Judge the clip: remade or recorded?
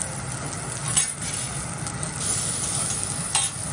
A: recorded